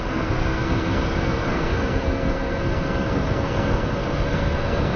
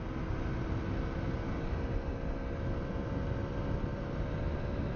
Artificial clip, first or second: first